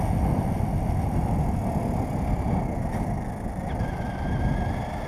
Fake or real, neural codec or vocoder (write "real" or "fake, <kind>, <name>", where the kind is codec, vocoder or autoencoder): real